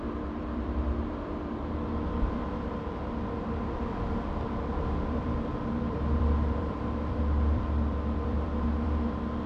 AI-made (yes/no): yes